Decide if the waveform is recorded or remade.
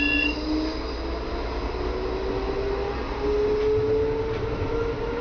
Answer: recorded